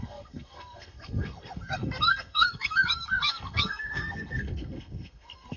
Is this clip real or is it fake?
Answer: fake